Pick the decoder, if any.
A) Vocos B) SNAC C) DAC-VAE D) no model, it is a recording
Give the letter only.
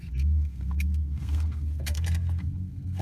B